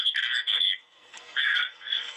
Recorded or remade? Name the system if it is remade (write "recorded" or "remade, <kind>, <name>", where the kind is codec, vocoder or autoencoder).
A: remade, codec, SNAC